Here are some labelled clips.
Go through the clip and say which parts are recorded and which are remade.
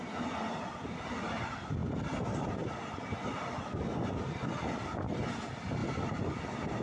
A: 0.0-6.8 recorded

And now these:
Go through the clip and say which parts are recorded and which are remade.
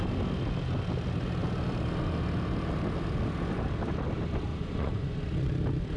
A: 0.0-4.5 recorded; 4.5-5.5 remade; 5.5-6.0 recorded